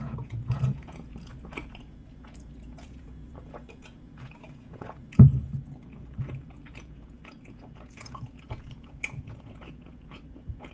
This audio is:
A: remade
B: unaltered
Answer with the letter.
A